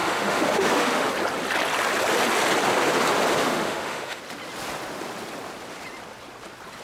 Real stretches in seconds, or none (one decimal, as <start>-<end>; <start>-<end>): 1.1-3.4; 4.2-6.8